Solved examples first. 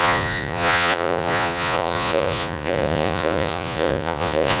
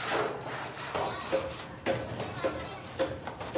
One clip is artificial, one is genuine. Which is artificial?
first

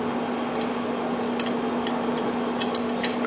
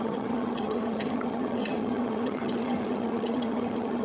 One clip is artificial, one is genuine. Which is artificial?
second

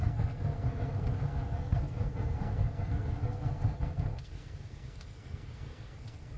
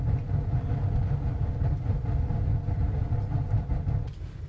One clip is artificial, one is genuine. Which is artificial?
first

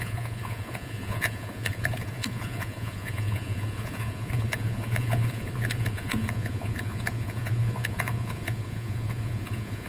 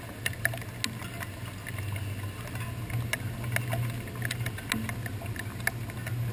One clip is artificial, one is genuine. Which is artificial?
first